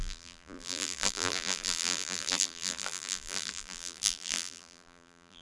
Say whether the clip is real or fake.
fake